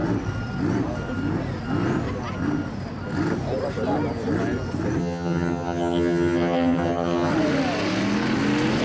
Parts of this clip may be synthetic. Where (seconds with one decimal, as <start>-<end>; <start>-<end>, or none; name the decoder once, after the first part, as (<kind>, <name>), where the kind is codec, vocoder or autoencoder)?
5.0-7.3 (vocoder, HiFi-GAN)

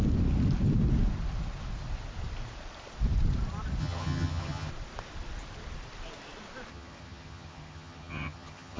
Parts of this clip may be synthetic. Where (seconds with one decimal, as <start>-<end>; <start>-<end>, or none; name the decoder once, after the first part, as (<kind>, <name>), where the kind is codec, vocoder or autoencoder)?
3.8-4.7 (vocoder, HiFi-GAN); 6.7-8.8

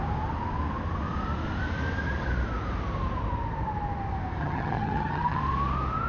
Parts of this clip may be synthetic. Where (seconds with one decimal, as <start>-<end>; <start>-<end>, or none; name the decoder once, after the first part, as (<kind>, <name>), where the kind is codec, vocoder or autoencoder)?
4.4-5.4 (vocoder, HiFi-GAN)

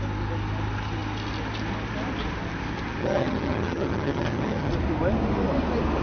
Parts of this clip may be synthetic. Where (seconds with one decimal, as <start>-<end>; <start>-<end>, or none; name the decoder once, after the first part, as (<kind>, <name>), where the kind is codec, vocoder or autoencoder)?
3.0-4.7 (vocoder, HiFi-GAN)

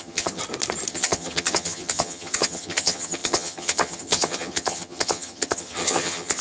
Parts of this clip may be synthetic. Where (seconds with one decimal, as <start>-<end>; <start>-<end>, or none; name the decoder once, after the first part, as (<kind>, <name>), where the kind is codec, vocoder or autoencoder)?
0.0-0.4 (vocoder, HiFi-GAN); 0.9-6.4

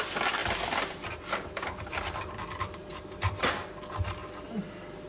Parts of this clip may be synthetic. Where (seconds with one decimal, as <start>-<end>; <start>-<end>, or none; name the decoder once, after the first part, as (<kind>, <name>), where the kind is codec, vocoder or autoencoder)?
none